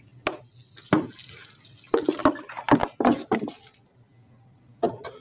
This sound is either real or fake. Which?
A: real